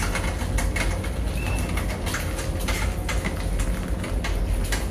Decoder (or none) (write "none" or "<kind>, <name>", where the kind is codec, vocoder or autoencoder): none